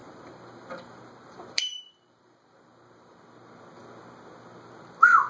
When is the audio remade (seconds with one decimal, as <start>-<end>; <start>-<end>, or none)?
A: 0.0-3.2